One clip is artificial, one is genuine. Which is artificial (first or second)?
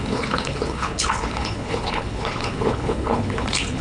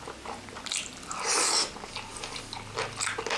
first